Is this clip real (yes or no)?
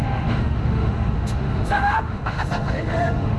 no